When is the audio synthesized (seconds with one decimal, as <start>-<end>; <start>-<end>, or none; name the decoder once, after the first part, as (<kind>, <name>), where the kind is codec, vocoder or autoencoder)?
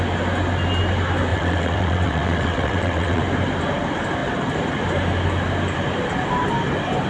1.3-3.2 (vocoder, WaveNeXt)